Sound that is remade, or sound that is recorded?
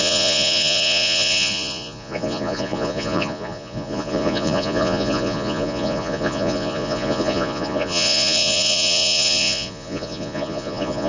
remade